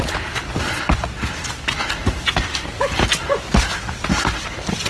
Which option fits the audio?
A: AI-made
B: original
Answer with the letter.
B